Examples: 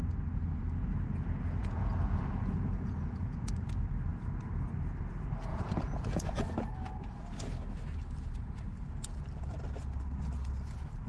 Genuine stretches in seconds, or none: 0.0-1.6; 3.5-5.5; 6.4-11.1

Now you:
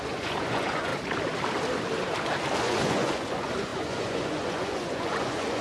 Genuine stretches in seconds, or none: 0.9-2.6

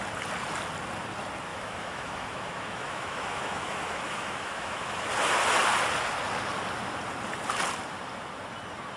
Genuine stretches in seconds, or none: 0.0-1.5; 5.1-9.0

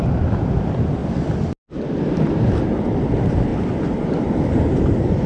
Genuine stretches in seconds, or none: 1.0-3.1; 3.5-4.2